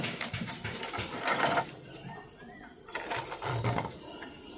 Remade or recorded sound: recorded